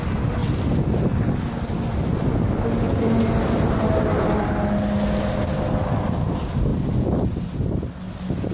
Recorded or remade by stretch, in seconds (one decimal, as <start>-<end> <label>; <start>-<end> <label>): 0.0-0.4 recorded; 0.4-0.9 remade; 0.9-8.5 recorded